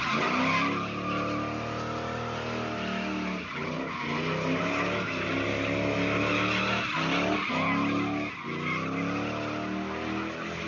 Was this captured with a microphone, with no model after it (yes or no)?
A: yes